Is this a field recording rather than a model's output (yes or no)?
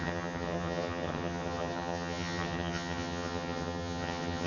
no